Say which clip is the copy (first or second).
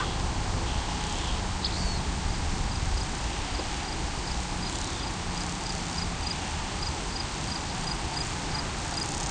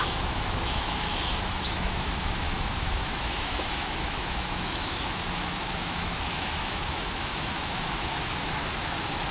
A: second